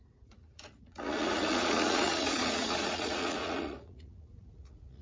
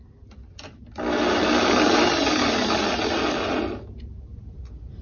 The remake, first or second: first